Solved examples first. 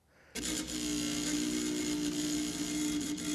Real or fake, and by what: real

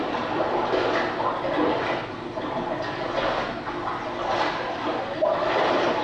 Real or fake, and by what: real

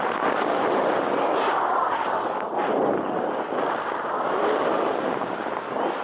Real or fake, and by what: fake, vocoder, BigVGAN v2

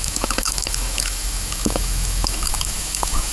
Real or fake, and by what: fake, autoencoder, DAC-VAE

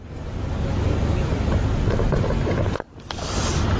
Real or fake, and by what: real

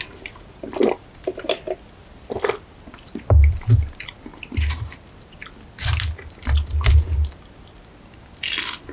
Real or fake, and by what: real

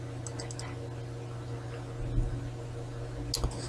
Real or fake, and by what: real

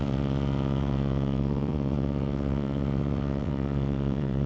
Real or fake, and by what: fake, vocoder, WaveNeXt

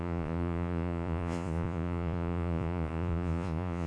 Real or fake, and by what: fake, vocoder, Vocos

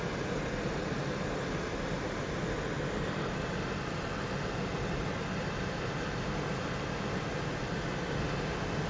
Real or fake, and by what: real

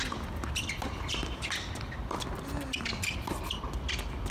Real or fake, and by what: real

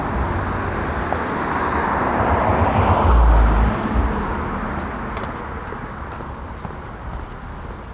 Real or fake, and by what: real